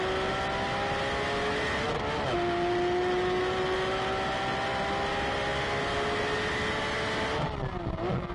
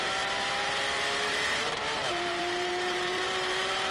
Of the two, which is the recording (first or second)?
first